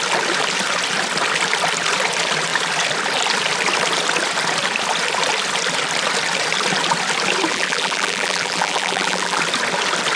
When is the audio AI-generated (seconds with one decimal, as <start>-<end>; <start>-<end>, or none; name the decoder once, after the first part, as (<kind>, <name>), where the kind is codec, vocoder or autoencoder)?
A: 7.5-9.4 (vocoder, BigVGAN v2)